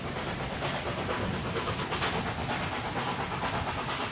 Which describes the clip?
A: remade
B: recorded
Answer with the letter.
B